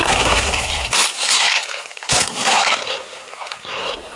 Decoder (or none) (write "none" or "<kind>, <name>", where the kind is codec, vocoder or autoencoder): codec, SNAC